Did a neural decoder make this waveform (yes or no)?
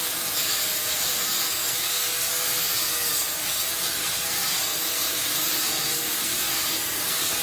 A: yes